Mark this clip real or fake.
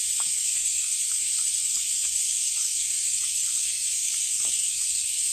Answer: fake